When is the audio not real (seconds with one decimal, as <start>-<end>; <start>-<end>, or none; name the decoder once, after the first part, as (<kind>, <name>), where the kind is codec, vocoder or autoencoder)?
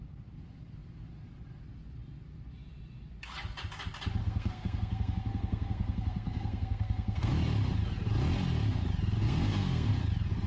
4.2-7.3 (codec, SNAC); 9.2-9.9